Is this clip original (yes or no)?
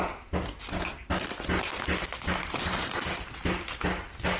yes